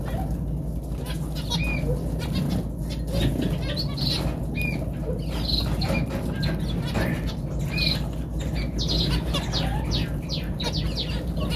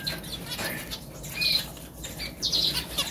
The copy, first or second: second